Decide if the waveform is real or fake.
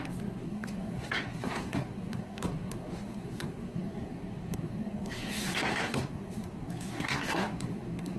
fake